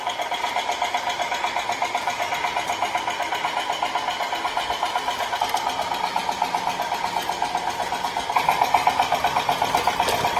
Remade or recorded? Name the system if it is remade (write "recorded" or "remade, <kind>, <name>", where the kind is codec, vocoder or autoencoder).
recorded